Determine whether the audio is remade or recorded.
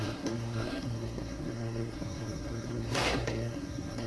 remade